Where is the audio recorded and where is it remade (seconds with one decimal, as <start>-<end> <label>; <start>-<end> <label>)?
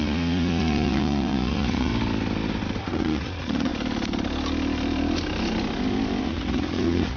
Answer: 0.0-1.9 remade; 1.9-2.8 recorded; 2.8-3.7 remade; 3.7-6.2 recorded; 6.2-7.2 remade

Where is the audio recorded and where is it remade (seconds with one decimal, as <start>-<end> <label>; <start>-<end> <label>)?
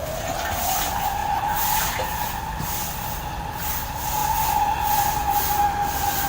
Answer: 0.0-6.3 recorded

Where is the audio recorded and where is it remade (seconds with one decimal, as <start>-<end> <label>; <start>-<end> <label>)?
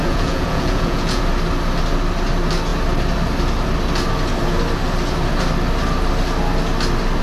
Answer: 0.0-1.2 remade; 1.2-7.2 recorded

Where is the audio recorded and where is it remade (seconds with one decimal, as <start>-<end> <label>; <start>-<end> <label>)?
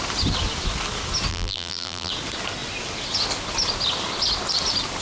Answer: 0.0-1.3 recorded; 1.3-2.1 remade; 2.1-5.0 recorded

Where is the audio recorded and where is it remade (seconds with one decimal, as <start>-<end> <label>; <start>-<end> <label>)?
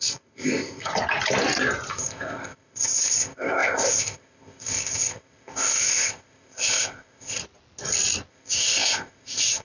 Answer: 0.0-0.9 remade; 0.9-1.9 recorded; 1.9-7.4 remade; 7.4-8.3 recorded; 8.3-9.6 remade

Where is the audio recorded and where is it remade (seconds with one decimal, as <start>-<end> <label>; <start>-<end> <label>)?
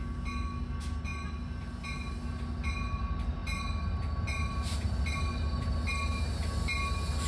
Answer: 0.0-7.3 recorded